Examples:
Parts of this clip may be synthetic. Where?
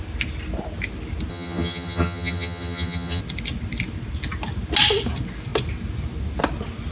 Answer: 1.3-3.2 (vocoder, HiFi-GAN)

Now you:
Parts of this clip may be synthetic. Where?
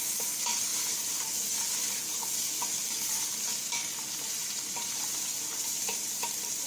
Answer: 0.7-1.5 (vocoder, BigVGAN v2); 4.4-6.0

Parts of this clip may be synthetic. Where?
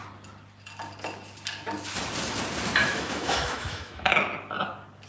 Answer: 2.8-4.1 (autoencoder, DAC-VAE)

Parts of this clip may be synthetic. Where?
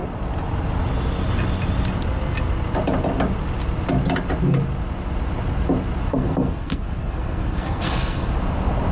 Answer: 6.1-8.3 (codec, SNAC)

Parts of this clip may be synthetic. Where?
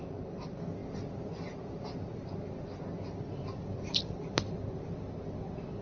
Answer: none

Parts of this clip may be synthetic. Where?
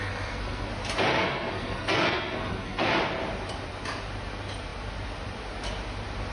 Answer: 0.0-0.7 (codec, SNAC); 1.1-2.9